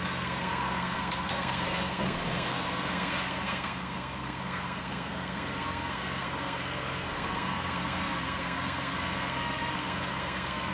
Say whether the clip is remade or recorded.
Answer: remade